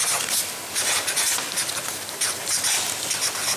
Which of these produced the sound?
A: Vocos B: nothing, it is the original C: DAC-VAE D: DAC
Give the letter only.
B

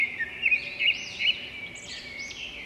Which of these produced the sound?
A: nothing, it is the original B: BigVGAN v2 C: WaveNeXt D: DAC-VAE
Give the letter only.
A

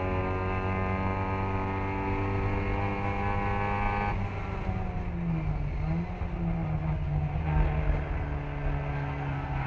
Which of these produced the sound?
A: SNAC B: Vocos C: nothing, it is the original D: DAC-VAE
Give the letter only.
C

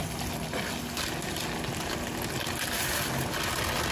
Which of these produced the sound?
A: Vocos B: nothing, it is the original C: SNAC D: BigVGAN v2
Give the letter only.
B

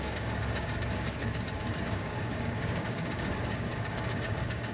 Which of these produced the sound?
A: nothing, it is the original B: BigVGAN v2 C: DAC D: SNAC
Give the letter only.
C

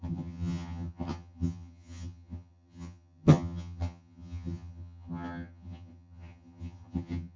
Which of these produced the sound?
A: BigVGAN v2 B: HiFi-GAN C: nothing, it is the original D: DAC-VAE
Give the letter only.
B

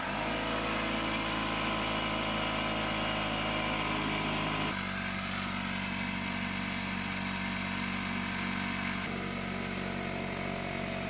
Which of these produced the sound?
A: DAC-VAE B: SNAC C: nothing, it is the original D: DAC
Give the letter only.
C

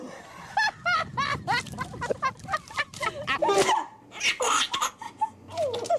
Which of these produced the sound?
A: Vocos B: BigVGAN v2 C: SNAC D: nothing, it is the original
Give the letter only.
D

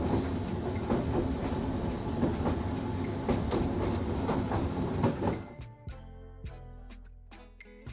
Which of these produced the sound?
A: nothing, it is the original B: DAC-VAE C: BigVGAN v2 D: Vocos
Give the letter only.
A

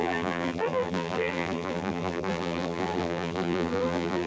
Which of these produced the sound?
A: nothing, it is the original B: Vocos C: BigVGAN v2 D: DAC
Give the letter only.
C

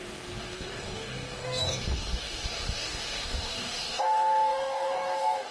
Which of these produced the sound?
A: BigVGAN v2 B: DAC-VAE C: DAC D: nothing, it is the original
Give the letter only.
C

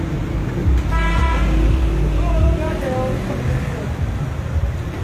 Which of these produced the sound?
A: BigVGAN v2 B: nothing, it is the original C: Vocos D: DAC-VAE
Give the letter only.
B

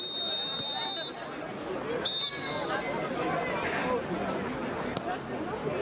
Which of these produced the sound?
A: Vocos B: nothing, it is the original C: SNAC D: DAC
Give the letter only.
B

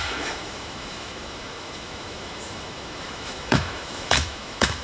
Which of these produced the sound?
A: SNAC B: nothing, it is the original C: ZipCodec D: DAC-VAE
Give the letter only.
D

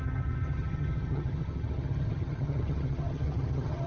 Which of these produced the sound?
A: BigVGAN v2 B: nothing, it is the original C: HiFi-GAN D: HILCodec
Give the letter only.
C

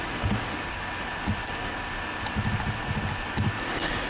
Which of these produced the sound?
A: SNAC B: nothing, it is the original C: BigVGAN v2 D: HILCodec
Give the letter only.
B